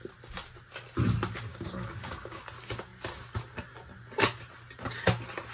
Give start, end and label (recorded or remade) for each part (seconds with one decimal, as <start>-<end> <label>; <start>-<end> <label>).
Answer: 0.0-1.5 recorded; 1.5-2.4 remade; 2.4-5.5 recorded